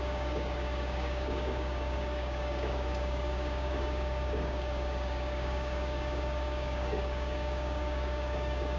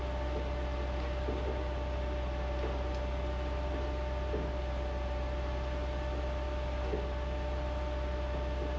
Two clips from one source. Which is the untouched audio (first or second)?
second